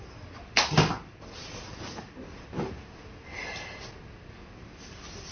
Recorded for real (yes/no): yes